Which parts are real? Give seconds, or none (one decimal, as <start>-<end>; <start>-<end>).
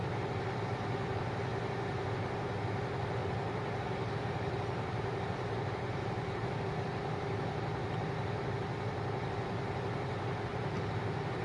0.0-1.5; 2.0-3.2; 6.5-10.5